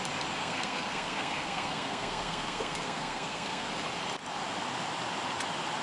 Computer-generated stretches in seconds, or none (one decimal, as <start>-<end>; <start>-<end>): 0.4-3.7